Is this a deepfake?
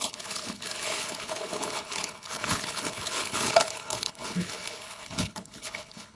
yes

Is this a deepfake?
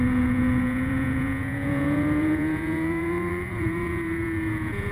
yes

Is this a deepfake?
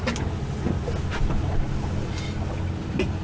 no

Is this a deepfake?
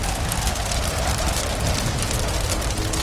no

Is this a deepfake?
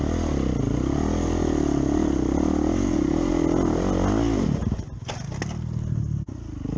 no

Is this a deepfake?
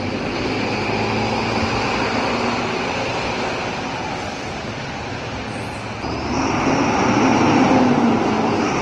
no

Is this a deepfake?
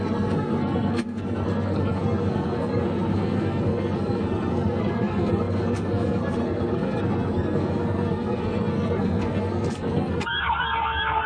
yes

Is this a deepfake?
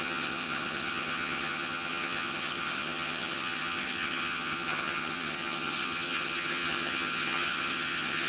yes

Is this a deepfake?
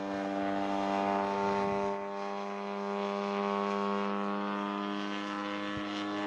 no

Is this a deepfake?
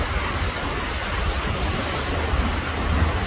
no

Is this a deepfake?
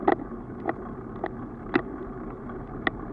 no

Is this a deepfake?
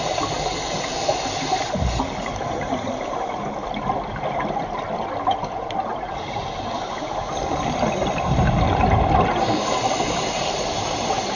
no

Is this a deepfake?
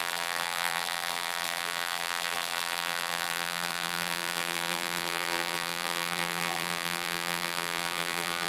yes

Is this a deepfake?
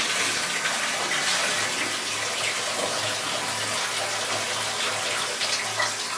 no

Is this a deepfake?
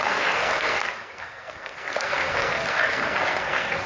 yes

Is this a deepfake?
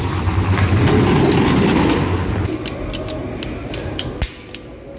no